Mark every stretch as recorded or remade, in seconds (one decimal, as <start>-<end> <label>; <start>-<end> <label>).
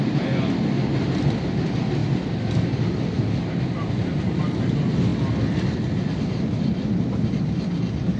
0.0-8.2 recorded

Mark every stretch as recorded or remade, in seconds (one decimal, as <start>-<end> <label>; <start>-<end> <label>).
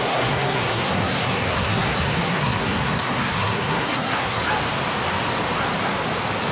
0.0-4.4 remade; 4.4-6.5 recorded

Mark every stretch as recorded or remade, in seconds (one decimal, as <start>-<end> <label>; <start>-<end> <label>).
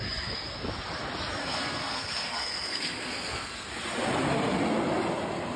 0.0-1.4 recorded; 1.4-3.7 remade; 3.7-5.6 recorded